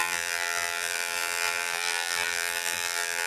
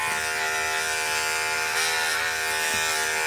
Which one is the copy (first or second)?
first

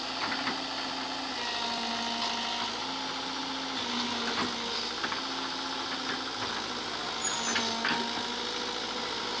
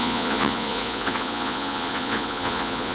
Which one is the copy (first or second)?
second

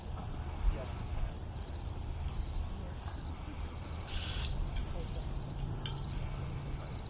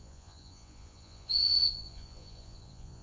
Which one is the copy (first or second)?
second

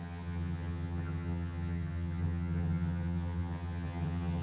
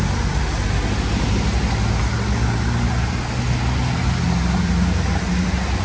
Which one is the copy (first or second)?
first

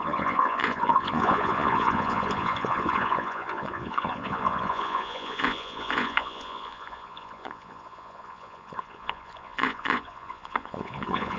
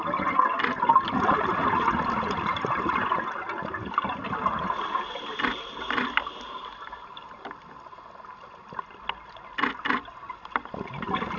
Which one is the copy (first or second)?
first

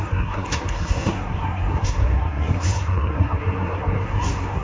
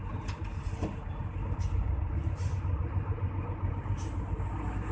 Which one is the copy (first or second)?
first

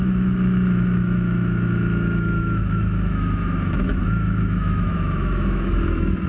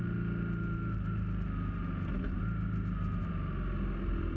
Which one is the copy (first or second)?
first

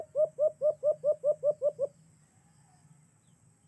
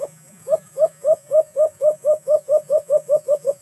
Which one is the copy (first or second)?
second